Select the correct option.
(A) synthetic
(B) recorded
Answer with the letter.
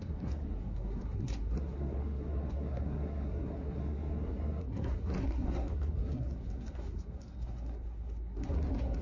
A